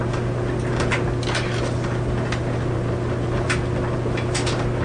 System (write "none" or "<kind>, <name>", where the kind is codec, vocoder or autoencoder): none